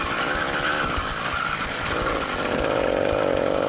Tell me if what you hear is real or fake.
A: real